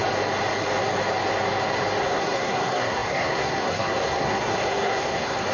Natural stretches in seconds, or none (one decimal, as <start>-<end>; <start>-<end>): 0.0-2.0